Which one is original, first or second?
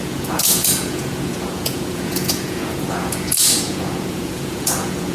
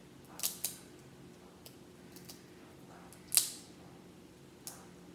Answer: second